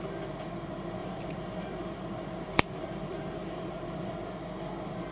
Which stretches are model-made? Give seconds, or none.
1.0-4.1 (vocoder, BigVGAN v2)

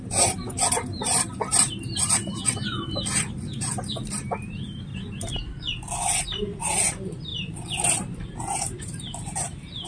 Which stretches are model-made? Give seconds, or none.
0.0-4.9 (vocoder, BigVGAN v2); 6.2-9.9

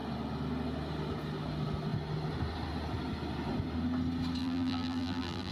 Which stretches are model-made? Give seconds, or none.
4.4-5.5 (vocoder, BigVGAN v2)

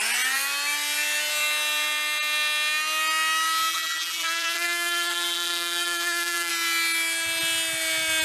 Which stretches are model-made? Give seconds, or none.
3.7-6.5 (vocoder, BigVGAN v2)

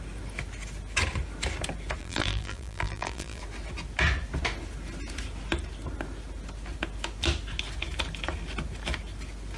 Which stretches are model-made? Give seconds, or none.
2.0-3.4 (vocoder, BigVGAN v2)